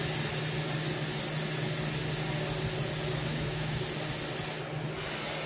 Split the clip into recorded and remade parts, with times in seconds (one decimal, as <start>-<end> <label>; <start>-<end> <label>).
0.0-3.3 recorded; 3.3-3.8 remade; 3.8-5.5 recorded